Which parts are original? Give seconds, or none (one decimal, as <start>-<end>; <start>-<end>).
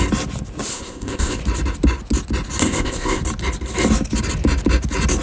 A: 0.0-0.7; 1.4-2.6; 3.2-5.2